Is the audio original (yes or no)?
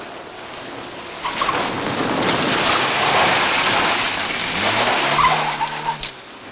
yes